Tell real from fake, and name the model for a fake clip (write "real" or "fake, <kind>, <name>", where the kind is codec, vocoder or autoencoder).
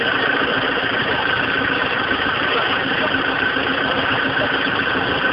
real